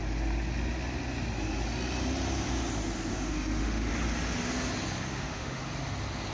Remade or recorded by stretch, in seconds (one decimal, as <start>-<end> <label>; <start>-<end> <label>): 0.0-3.1 recorded; 3.1-3.9 remade; 3.9-5.1 recorded; 5.1-5.6 remade; 5.6-6.3 recorded